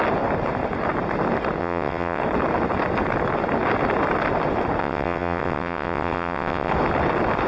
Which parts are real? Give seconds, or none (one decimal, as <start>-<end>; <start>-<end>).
0.0-1.6; 2.2-4.8; 6.7-7.5

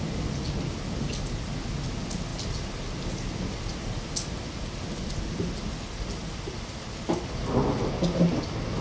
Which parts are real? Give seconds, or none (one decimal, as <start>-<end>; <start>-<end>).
0.0-8.8

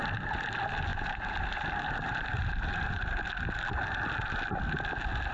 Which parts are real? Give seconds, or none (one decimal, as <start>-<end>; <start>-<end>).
0.0-0.9; 3.2-5.3

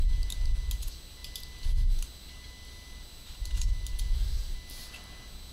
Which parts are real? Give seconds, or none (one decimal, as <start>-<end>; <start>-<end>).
0.0-5.5